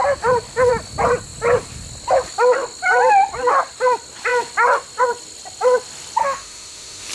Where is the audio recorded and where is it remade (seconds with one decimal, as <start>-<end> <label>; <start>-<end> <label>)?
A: 0.0-6.2 recorded; 6.2-7.1 remade